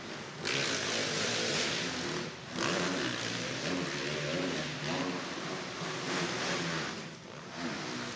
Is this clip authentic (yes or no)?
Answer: yes